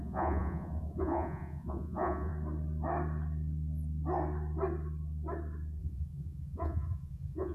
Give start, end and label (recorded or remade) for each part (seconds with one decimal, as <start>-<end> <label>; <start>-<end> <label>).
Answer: 0.0-2.3 remade; 2.3-5.8 recorded; 5.8-7.5 remade